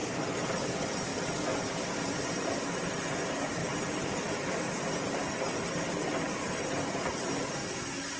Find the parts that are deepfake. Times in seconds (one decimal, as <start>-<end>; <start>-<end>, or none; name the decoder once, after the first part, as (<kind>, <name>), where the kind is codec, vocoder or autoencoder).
0.0-0.5 (vocoder, BigVGAN v2); 1.1-2.5; 3.6-5.2; 6.0-6.5